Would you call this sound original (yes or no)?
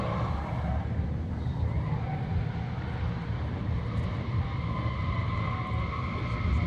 yes